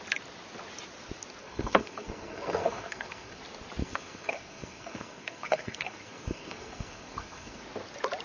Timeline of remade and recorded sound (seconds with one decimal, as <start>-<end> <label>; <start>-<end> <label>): 0.0-1.4 recorded; 1.4-3.4 remade; 3.4-3.8 recorded; 3.8-7.6 remade; 7.6-8.2 recorded